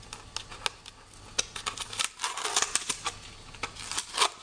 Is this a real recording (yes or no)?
yes